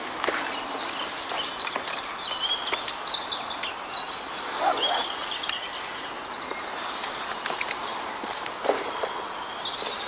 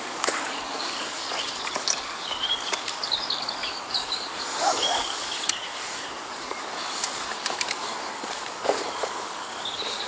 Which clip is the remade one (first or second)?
second